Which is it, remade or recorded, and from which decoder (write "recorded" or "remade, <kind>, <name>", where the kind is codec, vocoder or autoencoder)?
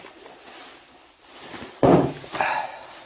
recorded